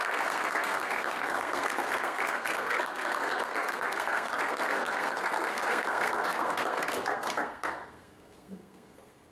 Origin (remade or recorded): remade